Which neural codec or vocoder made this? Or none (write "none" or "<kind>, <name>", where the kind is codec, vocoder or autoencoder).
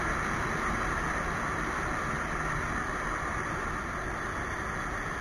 none